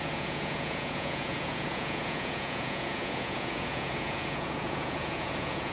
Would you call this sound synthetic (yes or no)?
yes